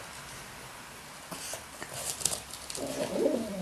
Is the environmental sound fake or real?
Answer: real